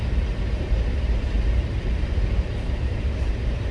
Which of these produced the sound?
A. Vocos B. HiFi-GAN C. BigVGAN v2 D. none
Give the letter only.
C